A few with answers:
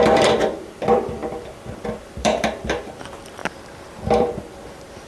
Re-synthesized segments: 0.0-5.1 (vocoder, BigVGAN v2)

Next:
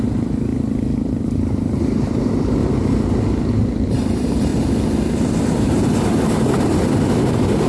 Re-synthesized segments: 0.0-0.5 (vocoder, BigVGAN v2); 1.2-2.6; 3.5-4.5; 5.4-7.7

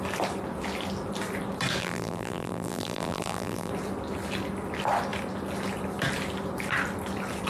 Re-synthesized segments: 1.8-3.7 (vocoder, BigVGAN v2)

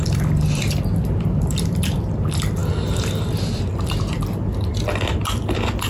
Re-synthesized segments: 0.0-5.9 (vocoder, BigVGAN v2)

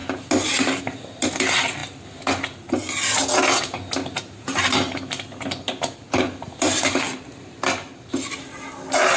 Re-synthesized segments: none